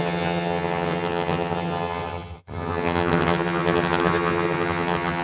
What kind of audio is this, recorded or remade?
remade